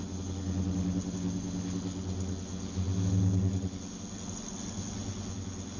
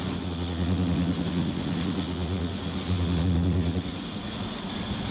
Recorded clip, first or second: first